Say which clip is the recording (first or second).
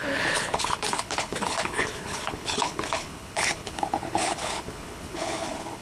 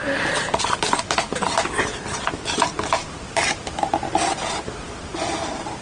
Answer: second